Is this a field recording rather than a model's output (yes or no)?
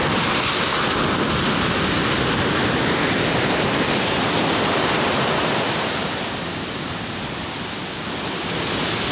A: yes